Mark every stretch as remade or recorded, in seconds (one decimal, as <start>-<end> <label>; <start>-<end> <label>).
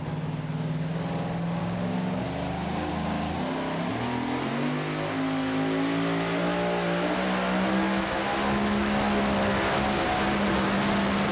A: 0.0-1.6 recorded; 1.6-2.2 remade; 2.2-2.9 recorded; 2.9-3.4 remade; 3.4-11.3 recorded